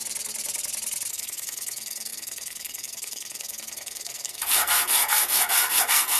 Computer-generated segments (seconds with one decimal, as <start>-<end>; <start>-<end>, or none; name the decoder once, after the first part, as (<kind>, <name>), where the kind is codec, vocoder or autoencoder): 1.1-6.2 (codec, SNAC)